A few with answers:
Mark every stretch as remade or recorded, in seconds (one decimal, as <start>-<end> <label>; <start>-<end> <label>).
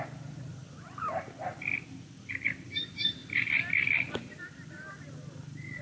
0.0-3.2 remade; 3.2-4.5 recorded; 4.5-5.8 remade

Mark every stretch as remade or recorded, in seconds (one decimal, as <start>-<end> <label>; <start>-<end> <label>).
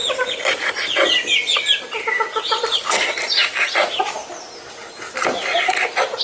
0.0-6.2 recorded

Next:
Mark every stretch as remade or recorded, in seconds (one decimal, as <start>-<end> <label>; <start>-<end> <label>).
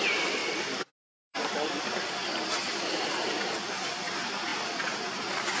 0.0-0.4 recorded; 0.4-3.8 remade; 3.8-4.5 recorded; 4.5-5.6 remade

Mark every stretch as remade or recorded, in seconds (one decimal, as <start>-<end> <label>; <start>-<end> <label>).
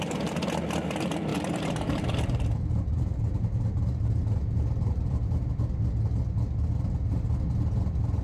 0.0-1.3 recorded; 1.3-5.5 remade; 5.5-8.2 recorded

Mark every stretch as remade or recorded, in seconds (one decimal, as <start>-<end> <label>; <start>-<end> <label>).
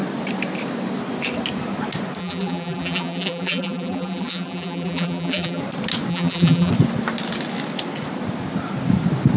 0.0-2.2 recorded; 2.2-5.6 remade; 5.6-6.1 recorded; 6.1-6.7 remade; 6.7-9.4 recorded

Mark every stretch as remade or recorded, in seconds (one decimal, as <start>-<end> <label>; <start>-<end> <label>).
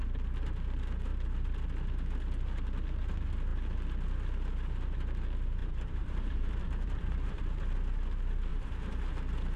0.0-5.6 recorded; 5.6-7.4 remade; 7.4-8.5 recorded; 8.5-9.1 remade; 9.1-9.6 recorded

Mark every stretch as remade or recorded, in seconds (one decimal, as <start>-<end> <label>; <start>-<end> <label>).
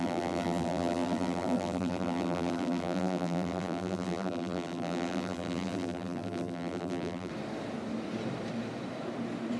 0.0-7.3 remade; 7.3-9.6 recorded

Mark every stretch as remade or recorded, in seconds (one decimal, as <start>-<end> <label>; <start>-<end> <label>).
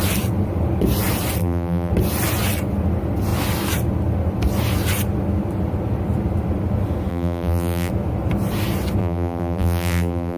0.0-1.4 recorded; 1.4-1.9 remade; 1.9-7.1 recorded; 7.1-7.9 remade; 7.9-9.0 recorded; 9.0-10.4 remade